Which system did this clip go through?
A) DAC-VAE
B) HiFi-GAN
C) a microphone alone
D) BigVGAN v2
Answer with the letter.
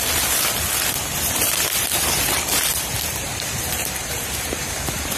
D